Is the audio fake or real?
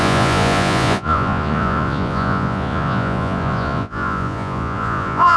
fake